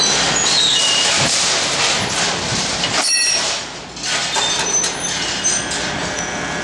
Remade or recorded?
remade